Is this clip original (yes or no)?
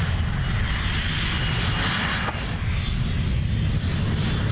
yes